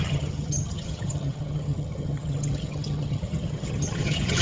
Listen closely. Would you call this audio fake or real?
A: fake